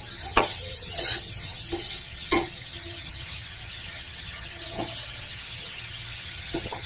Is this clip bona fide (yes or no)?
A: no